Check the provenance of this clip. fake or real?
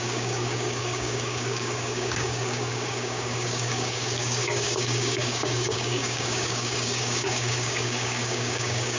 fake